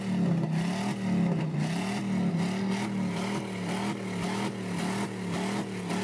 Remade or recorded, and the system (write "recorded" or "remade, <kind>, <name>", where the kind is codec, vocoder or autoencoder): recorded